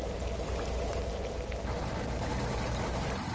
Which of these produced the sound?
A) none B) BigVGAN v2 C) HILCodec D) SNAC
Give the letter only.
A